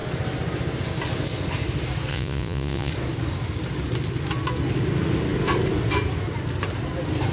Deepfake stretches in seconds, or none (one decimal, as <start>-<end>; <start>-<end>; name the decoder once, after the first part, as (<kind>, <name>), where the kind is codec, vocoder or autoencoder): 2.1-2.9 (vocoder, Vocos)